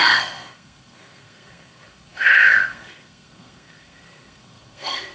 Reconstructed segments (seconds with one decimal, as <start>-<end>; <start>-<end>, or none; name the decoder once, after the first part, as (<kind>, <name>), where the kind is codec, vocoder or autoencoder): 0.0-5.1 (codec, SNAC)